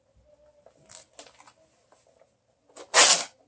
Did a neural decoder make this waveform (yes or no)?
no